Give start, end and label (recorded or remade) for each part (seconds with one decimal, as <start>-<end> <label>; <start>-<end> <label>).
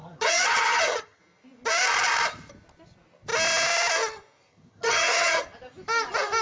0.0-1.2 remade; 1.2-4.5 recorded; 4.5-5.4 remade; 5.4-6.4 recorded